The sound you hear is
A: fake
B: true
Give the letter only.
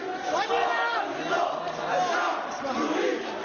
B